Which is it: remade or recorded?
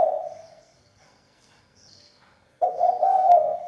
remade